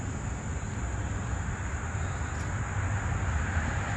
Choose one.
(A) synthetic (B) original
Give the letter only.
B